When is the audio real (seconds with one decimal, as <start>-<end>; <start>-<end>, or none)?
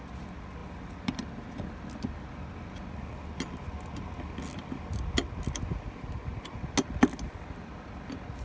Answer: 0.0-8.4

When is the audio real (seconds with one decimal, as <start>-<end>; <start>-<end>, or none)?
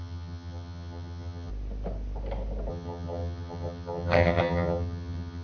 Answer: 1.5-2.7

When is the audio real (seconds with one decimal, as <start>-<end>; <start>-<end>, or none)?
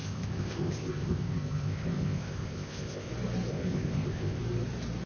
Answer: 3.1-3.5; 4.4-5.1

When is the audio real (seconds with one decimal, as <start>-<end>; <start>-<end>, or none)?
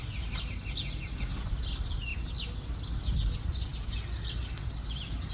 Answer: 0.0-5.3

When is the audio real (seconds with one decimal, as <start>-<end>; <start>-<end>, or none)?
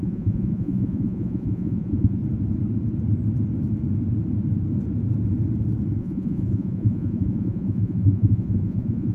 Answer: 2.2-6.0